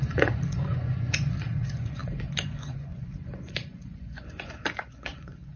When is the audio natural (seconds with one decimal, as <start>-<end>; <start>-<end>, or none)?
none